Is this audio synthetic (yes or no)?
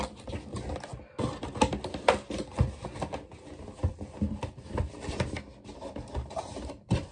no